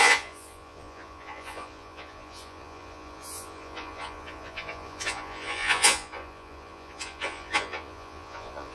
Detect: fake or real fake